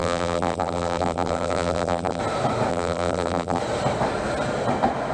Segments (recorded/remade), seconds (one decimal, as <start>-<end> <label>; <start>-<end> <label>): 0.0-2.2 remade; 2.2-2.7 recorded; 2.7-3.6 remade; 3.6-5.1 recorded